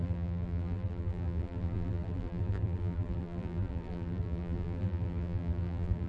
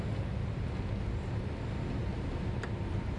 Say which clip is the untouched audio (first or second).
second